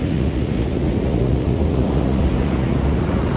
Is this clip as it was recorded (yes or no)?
no